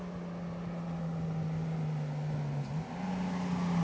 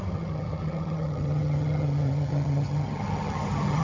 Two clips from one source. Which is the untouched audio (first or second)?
first